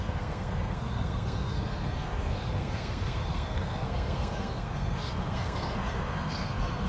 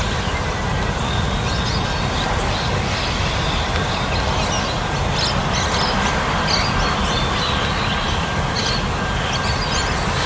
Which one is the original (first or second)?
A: second